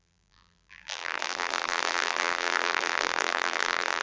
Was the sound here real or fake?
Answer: fake